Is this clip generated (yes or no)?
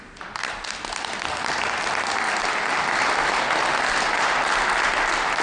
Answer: no